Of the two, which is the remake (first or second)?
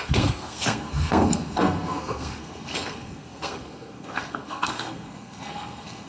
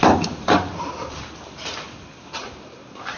first